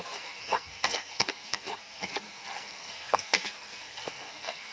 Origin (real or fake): fake